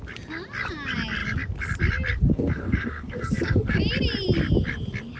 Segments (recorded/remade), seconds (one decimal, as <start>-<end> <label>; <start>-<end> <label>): 0.0-2.3 recorded; 2.3-3.8 remade; 3.8-5.2 recorded